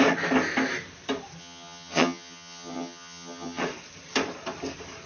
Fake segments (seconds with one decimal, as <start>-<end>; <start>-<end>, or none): 1.4-3.6